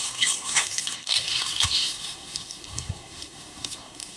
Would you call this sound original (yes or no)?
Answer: no